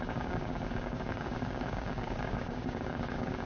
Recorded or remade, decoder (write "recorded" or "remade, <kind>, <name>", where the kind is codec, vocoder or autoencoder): remade, codec, DAC